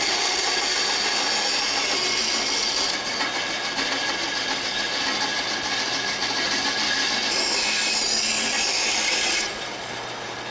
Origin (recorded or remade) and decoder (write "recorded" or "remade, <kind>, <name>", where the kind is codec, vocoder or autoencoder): recorded